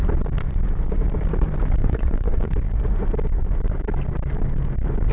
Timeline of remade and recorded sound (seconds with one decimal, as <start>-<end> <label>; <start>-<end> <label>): 0.0-1.8 recorded; 1.8-2.5 remade; 2.5-5.1 recorded